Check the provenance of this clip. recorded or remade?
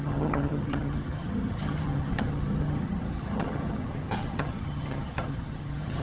remade